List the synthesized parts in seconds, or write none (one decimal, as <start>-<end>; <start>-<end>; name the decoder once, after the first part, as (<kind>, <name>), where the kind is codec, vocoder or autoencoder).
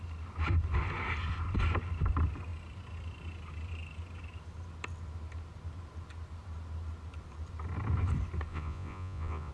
8.5-9.5 (vocoder, Vocos)